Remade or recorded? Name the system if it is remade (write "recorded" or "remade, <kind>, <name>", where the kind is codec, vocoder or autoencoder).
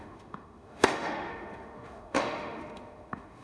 remade, autoencoder, DAC-VAE